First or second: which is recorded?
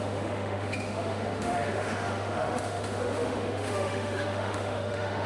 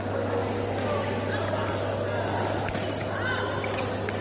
second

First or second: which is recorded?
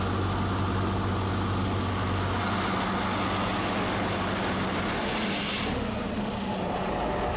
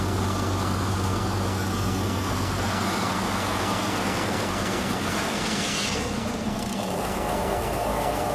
first